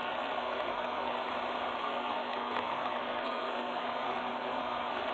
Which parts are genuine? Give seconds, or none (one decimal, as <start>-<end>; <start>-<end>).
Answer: 1.3-1.8